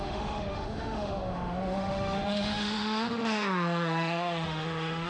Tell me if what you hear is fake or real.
fake